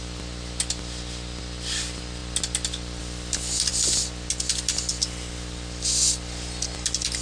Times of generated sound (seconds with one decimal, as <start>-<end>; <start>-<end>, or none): none